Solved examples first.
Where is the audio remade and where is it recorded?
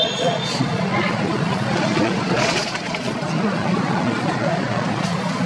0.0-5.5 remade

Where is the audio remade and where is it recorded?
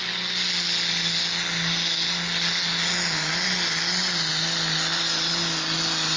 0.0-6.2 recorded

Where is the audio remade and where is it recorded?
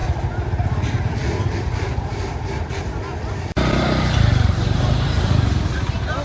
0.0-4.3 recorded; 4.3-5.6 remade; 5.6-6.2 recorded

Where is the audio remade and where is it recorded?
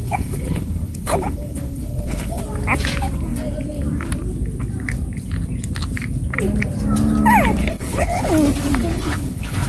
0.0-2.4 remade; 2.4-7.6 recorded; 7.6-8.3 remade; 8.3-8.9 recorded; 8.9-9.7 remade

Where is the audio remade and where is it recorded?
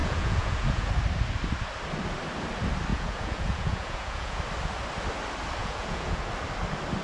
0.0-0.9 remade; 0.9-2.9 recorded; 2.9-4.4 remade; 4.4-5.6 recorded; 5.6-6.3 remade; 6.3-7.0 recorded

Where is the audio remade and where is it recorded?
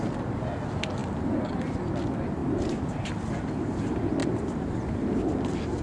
0.0-2.4 recorded; 2.4-3.1 remade; 3.1-4.2 recorded; 4.2-4.7 remade; 4.7-5.8 recorded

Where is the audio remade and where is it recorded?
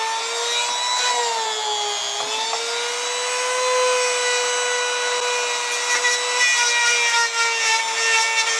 0.0-8.6 recorded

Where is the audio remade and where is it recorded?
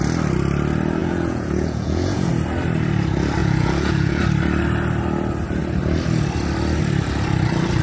0.0-1.0 recorded; 1.0-2.3 remade; 2.3-3.4 recorded; 3.4-4.2 remade; 4.2-7.8 recorded